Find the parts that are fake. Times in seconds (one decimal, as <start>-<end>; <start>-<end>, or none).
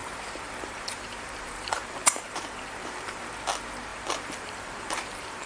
0.0-3.3; 3.9-5.5